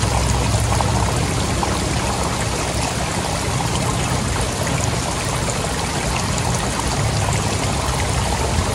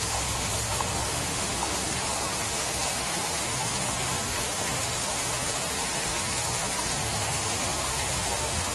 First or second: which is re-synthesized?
second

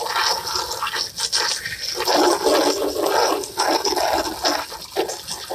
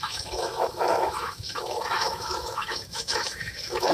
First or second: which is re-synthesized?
second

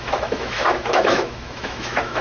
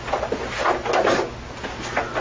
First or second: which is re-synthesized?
first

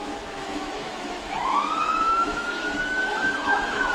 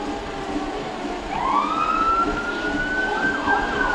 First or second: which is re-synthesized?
first